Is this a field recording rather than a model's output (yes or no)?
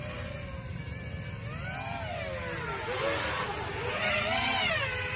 yes